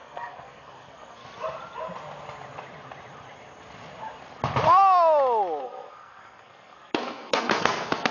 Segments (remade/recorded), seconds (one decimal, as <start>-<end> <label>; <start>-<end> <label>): 0.0-1.2 remade; 1.2-5.6 recorded; 5.6-8.1 remade